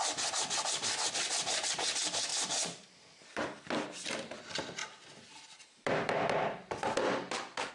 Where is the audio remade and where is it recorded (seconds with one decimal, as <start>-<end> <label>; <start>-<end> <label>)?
0.0-2.3 recorded; 2.3-3.6 remade; 3.6-7.7 recorded